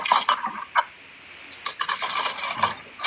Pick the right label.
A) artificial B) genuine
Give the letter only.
B